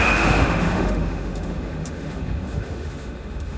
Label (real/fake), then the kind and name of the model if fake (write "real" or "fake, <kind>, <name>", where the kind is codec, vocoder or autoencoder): fake, autoencoder, DAC-VAE